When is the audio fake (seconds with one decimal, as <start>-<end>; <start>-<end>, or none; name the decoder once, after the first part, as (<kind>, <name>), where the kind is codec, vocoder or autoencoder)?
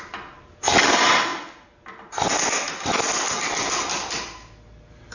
none